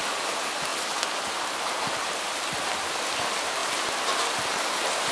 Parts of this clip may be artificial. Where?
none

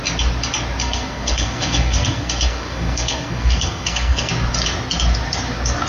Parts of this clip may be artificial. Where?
0.8-4.3 (codec, SNAC)

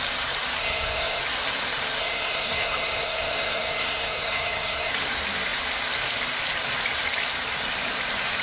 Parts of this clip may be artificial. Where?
0.6-1.2 (codec, SNAC); 2.0-4.9